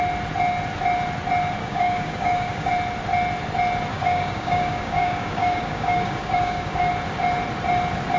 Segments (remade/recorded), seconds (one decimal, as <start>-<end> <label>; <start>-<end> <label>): 0.0-1.6 recorded; 1.6-2.7 remade; 2.7-3.9 recorded; 3.9-6.9 remade; 6.9-8.2 recorded